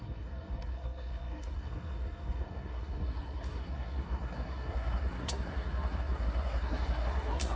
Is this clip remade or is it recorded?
remade